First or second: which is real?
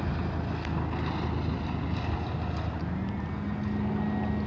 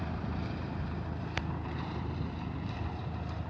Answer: first